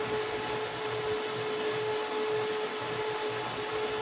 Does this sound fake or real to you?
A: real